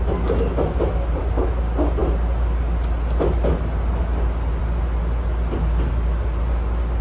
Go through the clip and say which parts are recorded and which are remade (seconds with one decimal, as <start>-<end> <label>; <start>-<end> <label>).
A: 0.0-7.0 recorded